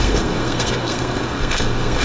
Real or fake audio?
fake